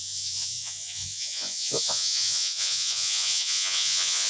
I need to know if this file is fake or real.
fake